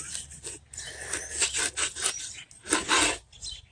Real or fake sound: real